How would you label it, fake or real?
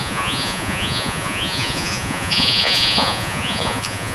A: fake